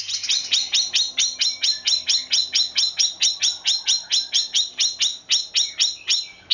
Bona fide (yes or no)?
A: yes